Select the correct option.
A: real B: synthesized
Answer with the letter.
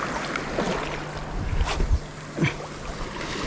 A